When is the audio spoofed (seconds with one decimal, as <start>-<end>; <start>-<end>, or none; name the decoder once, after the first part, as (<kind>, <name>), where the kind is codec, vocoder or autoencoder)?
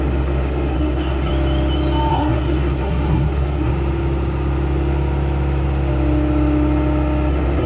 0.0-1.3 (codec, SNAC); 2.1-3.7; 7.3-7.7